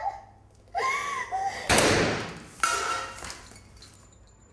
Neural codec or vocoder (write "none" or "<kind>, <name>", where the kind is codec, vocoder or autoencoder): none